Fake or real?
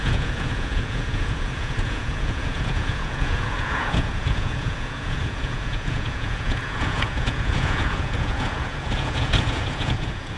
fake